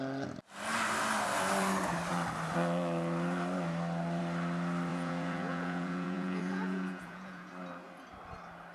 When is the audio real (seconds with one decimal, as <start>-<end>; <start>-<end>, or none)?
0.0-4.9; 7.5-8.7